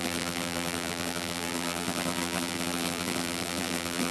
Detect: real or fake fake